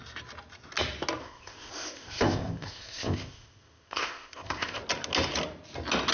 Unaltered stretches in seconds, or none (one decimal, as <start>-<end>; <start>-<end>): 0.0-1.2; 4.8-6.1